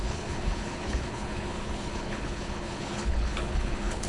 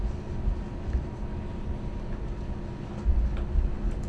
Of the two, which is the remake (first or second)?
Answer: first